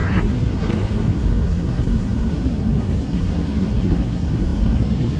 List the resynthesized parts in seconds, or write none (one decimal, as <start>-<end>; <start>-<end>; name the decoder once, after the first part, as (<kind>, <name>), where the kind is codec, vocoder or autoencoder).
0.0-5.2 (codec, SNAC)